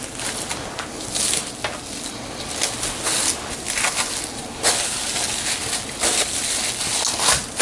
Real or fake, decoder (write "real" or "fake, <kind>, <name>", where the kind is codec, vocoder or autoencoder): real